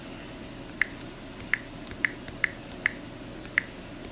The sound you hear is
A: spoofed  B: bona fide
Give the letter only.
B